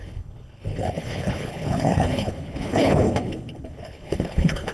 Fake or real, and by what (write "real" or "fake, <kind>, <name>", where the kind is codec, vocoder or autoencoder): fake, codec, HILCodec